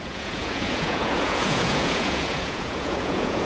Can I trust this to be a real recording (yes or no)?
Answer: no